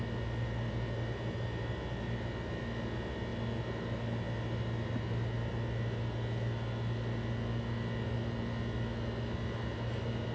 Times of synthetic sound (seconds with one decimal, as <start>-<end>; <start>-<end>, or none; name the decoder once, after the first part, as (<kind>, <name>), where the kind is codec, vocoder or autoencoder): none

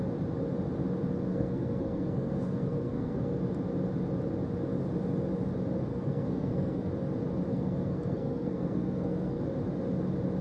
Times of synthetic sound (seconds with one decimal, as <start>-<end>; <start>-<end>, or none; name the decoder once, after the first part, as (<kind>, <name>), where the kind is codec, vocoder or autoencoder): 1.3-3.4 (codec, SNAC); 5.9-6.9; 7.5-9.4

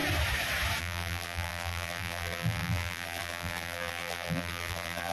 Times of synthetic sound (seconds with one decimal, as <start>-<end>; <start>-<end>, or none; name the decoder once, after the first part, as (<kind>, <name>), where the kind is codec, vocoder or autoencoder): 0.8-5.1 (vocoder, BigVGAN v2)

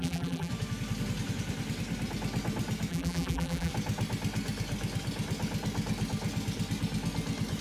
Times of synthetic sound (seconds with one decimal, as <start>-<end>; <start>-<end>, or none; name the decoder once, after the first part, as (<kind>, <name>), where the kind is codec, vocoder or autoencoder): 0.0-0.5 (vocoder, BigVGAN v2); 2.9-3.7

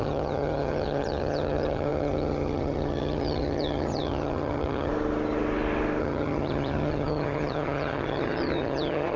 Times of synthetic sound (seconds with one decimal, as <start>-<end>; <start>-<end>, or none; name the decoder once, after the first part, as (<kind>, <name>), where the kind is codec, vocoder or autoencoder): 0.0-4.9 (vocoder, HiFi-GAN); 6.0-9.2

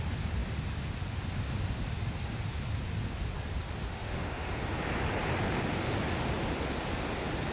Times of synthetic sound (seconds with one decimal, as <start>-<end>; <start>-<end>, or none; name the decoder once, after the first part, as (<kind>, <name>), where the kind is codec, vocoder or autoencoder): 3.8-4.5 (autoencoder, DAC-VAE)